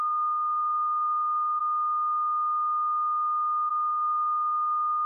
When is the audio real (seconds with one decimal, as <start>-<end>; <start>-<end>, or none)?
1.6-3.7